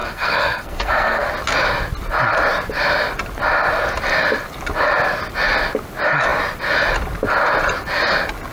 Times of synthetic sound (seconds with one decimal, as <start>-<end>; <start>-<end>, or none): 0.0-1.3